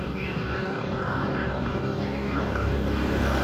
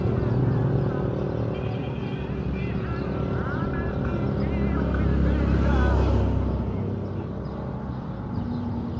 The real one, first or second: second